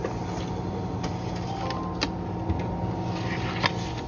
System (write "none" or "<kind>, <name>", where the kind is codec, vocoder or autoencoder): none